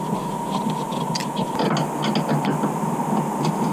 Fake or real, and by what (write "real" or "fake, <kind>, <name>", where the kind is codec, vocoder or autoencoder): real